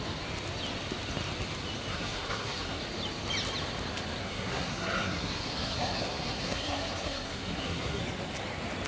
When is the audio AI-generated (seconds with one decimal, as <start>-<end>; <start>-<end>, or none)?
1.9-2.8; 4.2-8.0

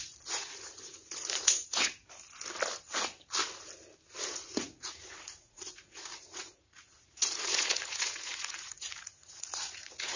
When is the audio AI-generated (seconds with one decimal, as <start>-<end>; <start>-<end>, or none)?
0.0-2.0; 4.3-10.2

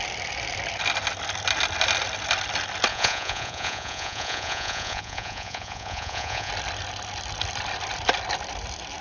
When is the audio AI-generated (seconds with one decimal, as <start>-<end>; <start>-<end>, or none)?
2.9-6.5

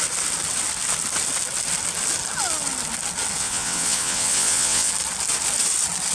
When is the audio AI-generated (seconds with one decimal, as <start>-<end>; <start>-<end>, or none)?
3.4-4.9

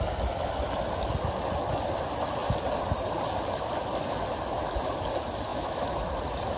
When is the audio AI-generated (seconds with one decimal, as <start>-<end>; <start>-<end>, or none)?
5.5-6.1

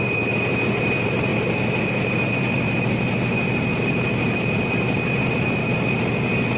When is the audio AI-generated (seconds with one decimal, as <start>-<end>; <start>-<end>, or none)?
none

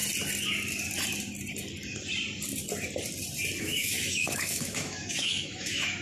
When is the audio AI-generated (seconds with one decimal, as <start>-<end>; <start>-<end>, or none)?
3.6-6.0